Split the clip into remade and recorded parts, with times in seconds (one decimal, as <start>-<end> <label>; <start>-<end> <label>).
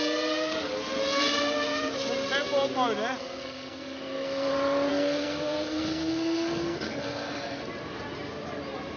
0.0-3.2 recorded; 3.2-4.5 remade; 4.5-4.9 recorded; 4.9-7.6 remade; 7.6-9.0 recorded